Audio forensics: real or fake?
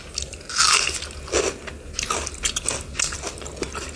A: real